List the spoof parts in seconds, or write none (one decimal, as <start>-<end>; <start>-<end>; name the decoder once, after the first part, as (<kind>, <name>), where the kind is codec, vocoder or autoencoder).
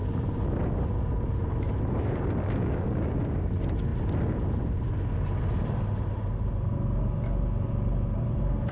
1.9-3.5 (codec, DAC)